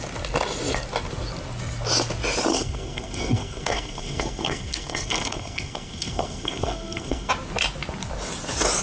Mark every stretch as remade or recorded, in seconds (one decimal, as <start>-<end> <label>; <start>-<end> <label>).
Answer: 0.0-2.5 recorded; 2.5-7.3 remade; 7.3-8.8 recorded